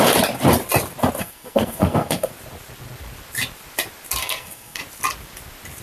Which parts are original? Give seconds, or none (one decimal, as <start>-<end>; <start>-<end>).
0.0-1.2; 2.3-4.2; 4.8-5.8